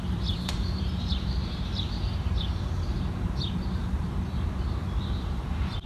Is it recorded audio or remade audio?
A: remade